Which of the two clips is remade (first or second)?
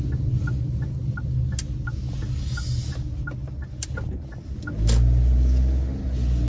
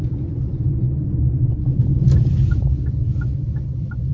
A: second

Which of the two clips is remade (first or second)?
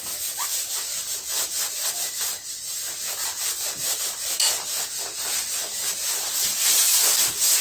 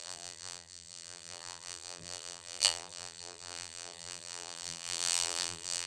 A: second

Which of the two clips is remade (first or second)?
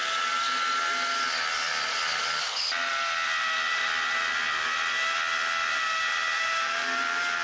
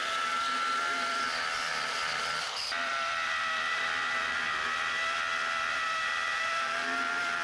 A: second